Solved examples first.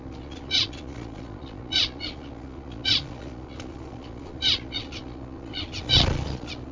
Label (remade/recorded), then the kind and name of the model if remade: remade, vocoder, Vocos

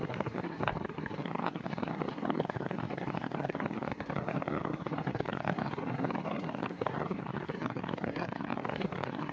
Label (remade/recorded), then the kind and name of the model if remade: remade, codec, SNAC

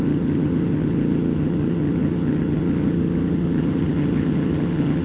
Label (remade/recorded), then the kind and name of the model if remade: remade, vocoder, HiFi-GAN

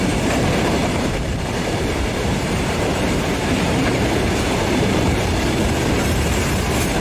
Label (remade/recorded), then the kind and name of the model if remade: remade, vocoder, BigVGAN v2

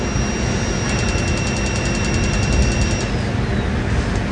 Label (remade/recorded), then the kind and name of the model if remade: recorded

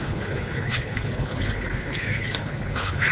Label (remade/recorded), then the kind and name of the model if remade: remade, codec, HILCodec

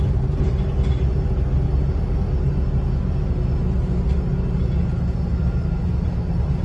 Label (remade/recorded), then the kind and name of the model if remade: recorded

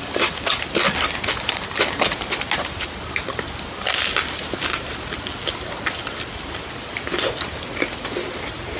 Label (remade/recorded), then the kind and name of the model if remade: recorded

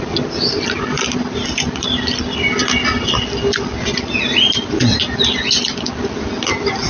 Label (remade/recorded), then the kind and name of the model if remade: recorded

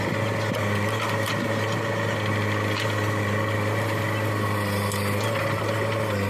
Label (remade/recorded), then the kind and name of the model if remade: recorded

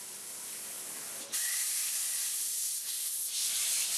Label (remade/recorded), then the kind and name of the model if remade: recorded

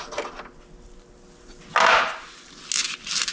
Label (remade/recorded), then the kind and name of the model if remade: recorded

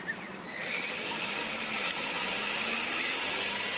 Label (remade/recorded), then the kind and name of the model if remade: recorded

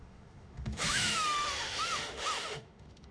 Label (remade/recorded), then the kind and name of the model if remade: remade, autoencoder, DAC-VAE